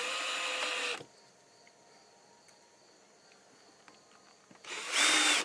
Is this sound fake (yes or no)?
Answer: no